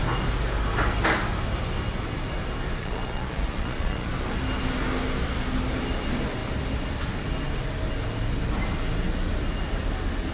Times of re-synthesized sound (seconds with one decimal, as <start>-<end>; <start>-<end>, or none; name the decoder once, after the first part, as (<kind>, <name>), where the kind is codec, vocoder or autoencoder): 2.8-4.1 (vocoder, Vocos)